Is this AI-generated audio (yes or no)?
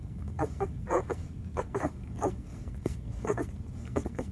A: yes